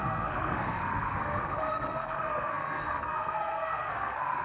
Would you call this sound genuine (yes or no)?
no